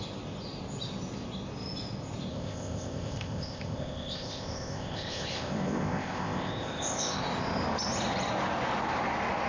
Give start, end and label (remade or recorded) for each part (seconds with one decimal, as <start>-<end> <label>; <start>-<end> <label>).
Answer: 0.0-2.3 recorded; 2.3-7.2 remade; 7.2-9.5 recorded